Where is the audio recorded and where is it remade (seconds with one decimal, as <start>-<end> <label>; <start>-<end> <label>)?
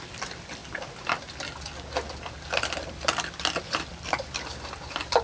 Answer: 0.0-5.2 remade